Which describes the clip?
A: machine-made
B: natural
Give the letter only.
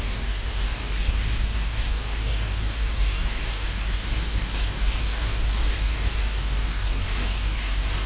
A